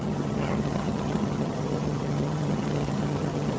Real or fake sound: fake